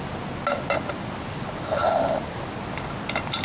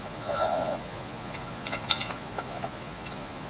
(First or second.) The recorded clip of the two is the first